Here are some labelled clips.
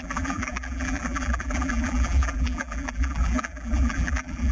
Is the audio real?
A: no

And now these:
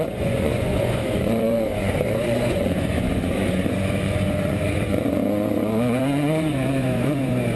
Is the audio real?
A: no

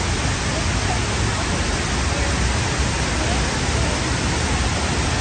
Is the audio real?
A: yes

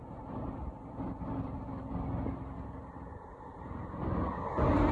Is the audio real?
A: yes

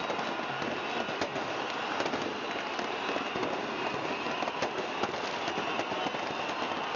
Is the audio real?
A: yes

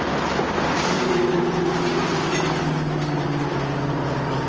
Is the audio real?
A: yes